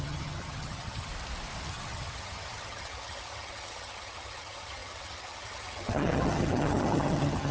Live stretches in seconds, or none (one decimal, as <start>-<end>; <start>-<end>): 1.1-1.7